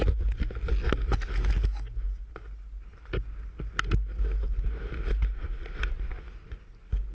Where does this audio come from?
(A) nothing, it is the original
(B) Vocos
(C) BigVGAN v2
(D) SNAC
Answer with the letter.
A